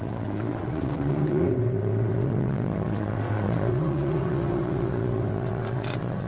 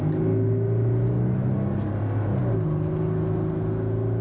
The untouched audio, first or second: second